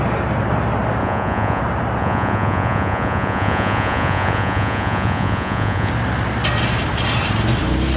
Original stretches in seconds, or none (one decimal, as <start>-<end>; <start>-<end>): 0.0-1.0; 1.6-2.0; 5.9-8.0